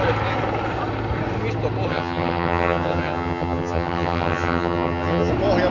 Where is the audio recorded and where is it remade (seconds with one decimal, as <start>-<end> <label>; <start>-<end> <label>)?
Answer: 0.0-1.9 recorded; 1.9-5.3 remade; 5.3-5.7 recorded